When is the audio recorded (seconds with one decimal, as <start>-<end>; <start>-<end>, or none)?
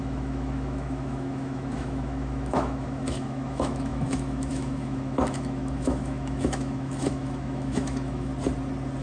8.3-9.0